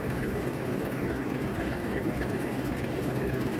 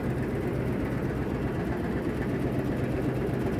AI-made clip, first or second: first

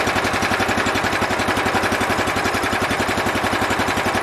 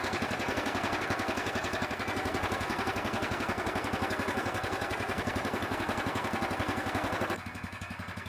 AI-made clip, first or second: second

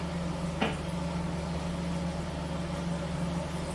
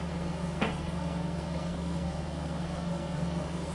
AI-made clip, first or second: second